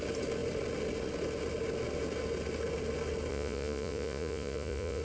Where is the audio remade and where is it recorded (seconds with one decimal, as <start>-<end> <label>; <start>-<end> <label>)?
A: 0.0-3.3 recorded; 3.3-5.0 remade